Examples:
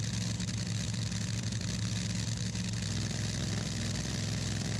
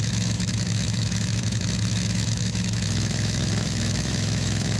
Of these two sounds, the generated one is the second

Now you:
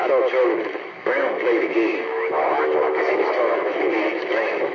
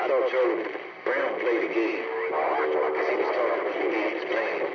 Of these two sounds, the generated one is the first